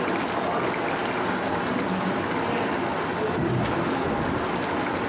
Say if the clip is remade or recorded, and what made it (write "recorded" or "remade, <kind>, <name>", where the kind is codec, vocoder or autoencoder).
recorded